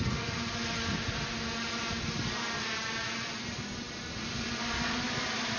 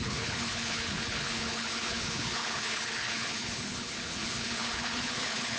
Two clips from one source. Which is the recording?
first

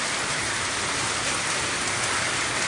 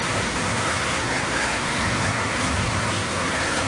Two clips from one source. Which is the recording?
first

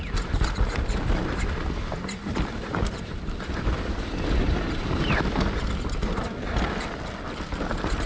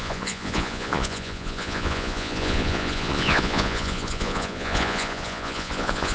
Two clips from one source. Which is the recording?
first